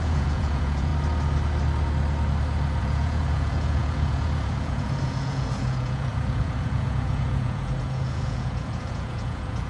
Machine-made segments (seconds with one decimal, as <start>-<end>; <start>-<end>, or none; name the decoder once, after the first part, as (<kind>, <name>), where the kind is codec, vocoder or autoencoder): 0.0-0.9 (vocoder, Vocos); 2.8-9.7